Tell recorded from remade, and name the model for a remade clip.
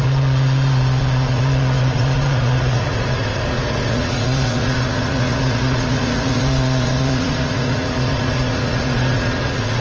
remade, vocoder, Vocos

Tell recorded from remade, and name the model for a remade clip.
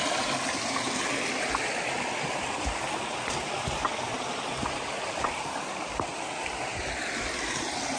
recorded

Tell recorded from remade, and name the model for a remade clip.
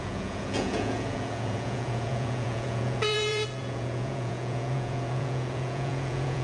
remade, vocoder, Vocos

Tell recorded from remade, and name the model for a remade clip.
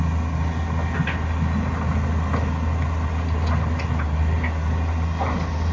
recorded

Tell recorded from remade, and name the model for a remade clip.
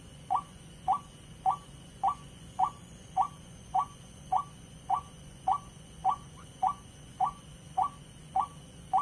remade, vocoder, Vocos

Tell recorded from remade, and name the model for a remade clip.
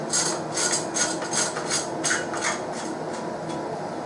recorded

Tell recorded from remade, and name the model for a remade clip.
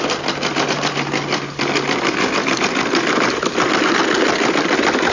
recorded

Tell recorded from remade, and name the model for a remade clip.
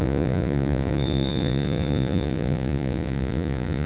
remade, vocoder, Vocos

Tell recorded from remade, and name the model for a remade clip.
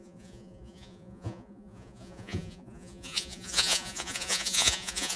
remade, vocoder, Vocos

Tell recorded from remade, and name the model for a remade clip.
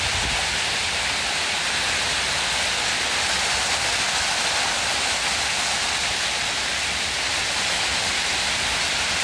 recorded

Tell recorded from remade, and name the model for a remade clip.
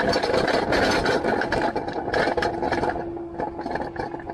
recorded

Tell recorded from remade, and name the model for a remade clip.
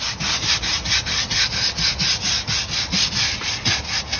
recorded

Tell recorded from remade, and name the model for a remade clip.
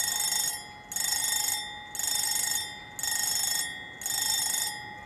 recorded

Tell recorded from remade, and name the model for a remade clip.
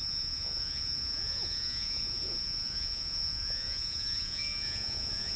remade, vocoder, Vocos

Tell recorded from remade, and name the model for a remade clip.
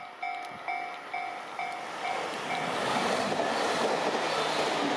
recorded